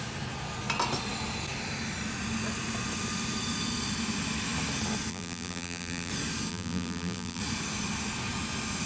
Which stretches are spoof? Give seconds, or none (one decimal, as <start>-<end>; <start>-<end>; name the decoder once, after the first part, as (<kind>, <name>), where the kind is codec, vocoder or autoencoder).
5.1-6.1 (vocoder, BigVGAN v2); 6.5-7.4